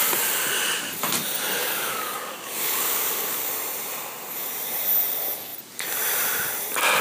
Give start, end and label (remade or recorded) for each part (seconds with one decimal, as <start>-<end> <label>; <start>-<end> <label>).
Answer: 0.0-1.6 recorded; 1.6-3.5 remade; 3.5-7.0 recorded